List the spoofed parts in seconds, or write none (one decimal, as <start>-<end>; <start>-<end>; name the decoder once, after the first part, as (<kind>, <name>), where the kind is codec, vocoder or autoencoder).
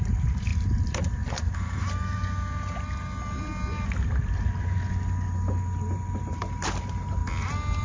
0.0-0.5 (vocoder, BigVGAN v2); 1.4-2.2; 6.3-7.2